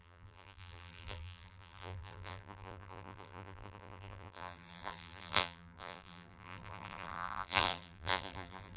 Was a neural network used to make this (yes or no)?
yes